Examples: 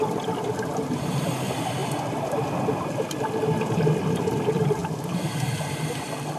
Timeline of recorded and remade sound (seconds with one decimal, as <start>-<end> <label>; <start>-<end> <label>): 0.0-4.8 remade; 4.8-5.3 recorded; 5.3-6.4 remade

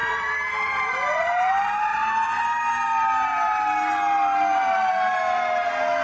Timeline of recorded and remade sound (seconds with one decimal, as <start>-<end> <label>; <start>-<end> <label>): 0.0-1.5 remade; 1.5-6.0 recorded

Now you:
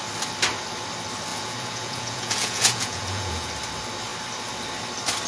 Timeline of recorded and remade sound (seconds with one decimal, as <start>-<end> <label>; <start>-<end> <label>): 0.0-1.3 recorded; 1.3-3.5 remade; 3.5-5.3 recorded

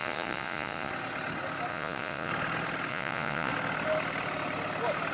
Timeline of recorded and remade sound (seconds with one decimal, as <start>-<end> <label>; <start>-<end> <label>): 0.0-0.9 remade; 0.9-1.7 recorded; 1.7-2.3 remade; 2.3-2.9 recorded; 2.9-3.5 remade; 3.5-5.1 recorded